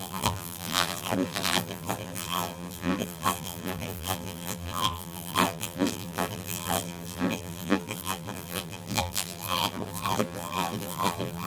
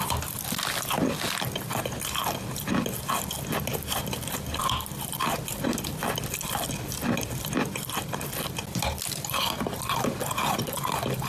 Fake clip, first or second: first